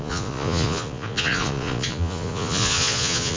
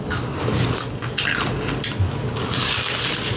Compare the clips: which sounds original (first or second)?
second